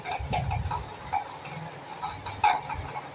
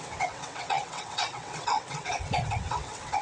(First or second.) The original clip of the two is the first